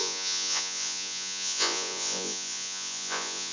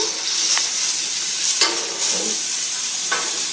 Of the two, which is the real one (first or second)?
second